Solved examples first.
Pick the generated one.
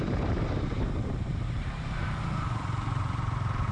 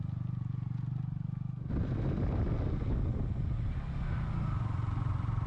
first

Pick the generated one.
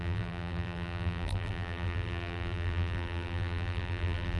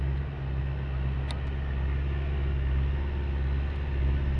first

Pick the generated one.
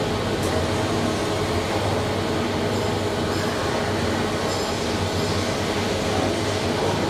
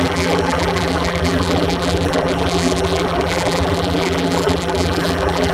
second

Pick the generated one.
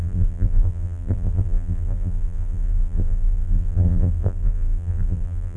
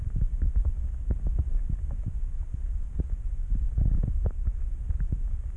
first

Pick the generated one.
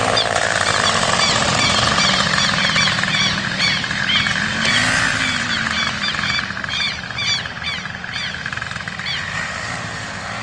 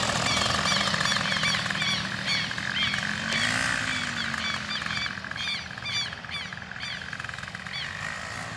first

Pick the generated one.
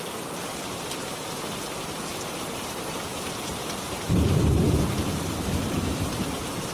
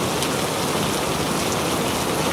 first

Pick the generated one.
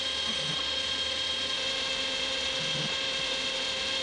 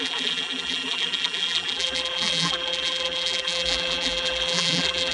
second